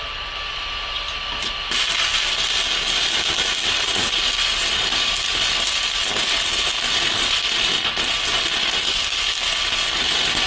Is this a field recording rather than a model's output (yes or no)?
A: yes